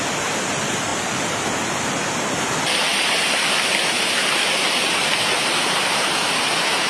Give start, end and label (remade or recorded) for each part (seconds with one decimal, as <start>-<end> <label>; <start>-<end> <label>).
0.0-2.9 recorded; 2.9-6.4 remade; 6.4-6.9 recorded